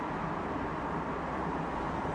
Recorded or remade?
recorded